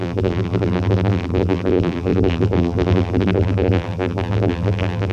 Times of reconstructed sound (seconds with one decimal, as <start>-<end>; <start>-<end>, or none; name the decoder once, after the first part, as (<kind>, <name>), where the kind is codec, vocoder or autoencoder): 0.0-5.1 (vocoder, BigVGAN v2)